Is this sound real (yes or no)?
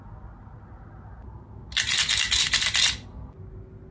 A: yes